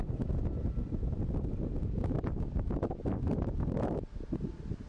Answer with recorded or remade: recorded